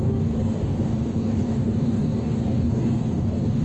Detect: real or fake fake